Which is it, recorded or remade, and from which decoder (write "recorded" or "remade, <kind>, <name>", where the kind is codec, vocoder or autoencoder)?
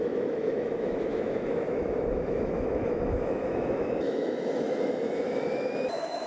remade, autoencoder, DAC-VAE